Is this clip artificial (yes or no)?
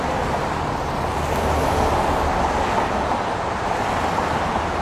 no